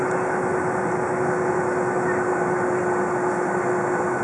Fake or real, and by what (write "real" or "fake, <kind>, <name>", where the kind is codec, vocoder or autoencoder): real